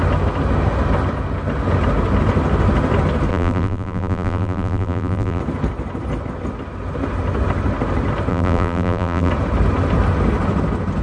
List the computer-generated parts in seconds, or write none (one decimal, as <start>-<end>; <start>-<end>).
3.3-5.4; 8.3-9.3